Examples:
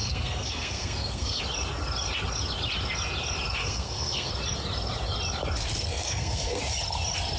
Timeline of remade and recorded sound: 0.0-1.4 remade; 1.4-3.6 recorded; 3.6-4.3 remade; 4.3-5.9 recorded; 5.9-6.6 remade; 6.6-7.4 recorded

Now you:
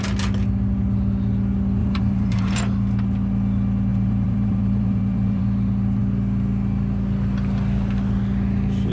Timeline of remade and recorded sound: 0.0-1.8 recorded; 1.8-2.6 remade; 2.6-3.9 recorded; 3.9-5.4 remade; 5.4-8.9 recorded